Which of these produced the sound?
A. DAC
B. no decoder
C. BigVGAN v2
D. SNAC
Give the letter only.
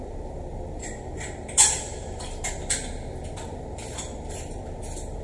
C